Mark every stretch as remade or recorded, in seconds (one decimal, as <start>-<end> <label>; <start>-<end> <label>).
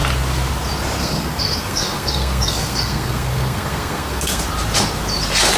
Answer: 0.0-1.0 recorded; 1.0-4.4 remade; 4.4-5.6 recorded